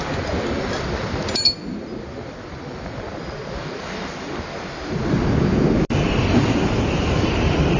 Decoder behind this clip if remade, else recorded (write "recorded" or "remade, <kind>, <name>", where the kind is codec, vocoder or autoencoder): recorded